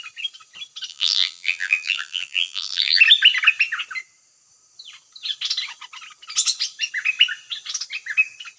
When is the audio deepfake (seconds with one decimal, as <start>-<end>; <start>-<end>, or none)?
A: 0.9-3.0